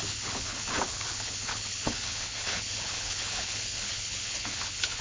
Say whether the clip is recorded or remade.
remade